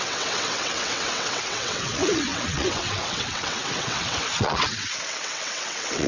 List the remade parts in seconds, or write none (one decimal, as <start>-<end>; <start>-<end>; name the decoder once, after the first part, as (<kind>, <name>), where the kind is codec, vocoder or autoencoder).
0.0-6.1 (vocoder, WaveNeXt)